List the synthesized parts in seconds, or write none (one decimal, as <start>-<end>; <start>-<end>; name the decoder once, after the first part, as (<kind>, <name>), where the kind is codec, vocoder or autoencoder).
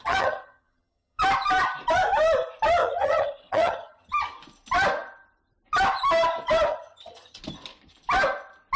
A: 0.0-1.2 (vocoder, HiFi-GAN); 2.8-4.1; 6.7-7.4